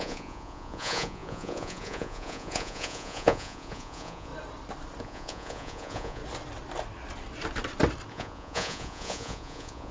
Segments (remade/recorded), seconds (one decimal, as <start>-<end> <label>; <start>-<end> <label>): 0.0-4.3 remade; 4.3-5.0 recorded; 5.0-6.2 remade; 6.2-8.1 recorded; 8.1-9.9 remade